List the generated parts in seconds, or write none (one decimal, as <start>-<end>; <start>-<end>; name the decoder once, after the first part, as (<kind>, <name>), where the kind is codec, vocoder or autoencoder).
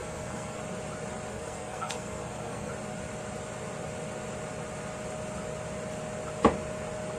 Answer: 0.0-0.6 (codec, SNAC); 1.3-2.7